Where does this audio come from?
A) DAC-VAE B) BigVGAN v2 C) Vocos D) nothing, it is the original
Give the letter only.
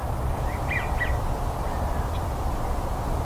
D